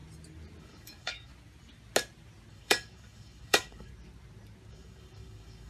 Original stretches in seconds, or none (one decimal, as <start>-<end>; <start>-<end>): 0.0-0.6; 1.3-2.5; 3.9-4.7